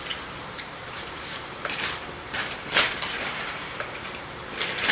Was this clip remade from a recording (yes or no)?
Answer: yes